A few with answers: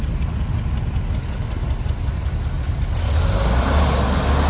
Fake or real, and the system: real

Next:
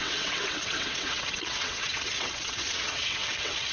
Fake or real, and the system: fake, vocoder, WaveNeXt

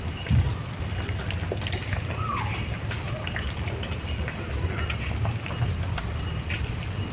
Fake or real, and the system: real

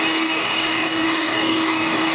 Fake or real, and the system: fake, codec, DAC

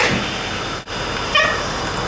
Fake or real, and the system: real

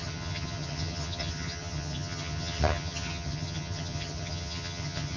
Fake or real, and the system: fake, vocoder, HiFi-GAN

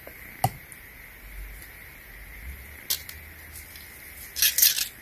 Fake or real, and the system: real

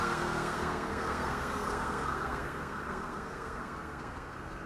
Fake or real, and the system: fake, codec, SNAC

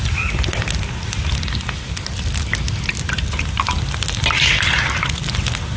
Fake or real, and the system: real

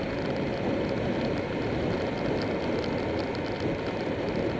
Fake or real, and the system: real